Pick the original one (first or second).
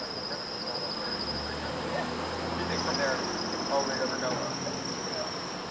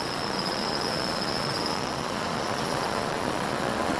first